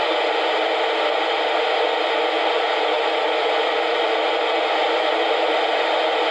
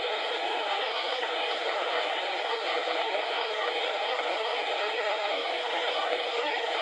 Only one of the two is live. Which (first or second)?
first